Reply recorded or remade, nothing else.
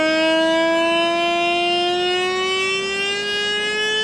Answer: recorded